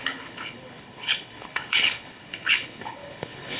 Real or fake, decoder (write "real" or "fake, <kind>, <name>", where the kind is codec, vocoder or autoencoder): fake, codec, HILCodec